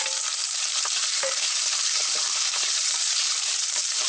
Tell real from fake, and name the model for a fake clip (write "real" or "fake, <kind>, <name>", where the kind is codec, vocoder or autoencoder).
fake, vocoder, BigVGAN v2